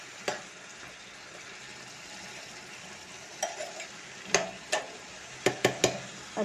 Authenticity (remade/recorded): recorded